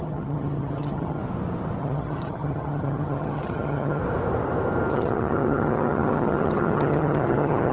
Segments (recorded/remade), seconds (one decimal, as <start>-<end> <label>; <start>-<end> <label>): 0.0-1.2 remade; 1.2-1.8 recorded; 1.8-4.0 remade; 4.0-4.9 recorded; 4.9-7.7 remade